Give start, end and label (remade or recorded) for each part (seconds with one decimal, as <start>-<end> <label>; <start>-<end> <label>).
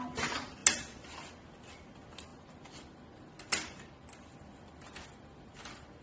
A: 0.0-6.0 recorded